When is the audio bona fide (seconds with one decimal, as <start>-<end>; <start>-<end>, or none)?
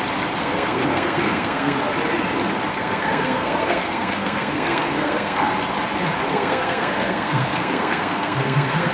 0.0-0.4; 1.8-2.7; 5.5-6.3